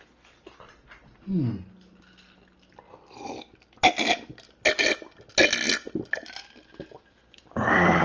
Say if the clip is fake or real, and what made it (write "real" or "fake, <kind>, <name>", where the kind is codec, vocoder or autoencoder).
real